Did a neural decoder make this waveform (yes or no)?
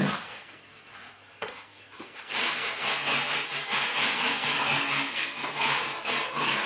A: yes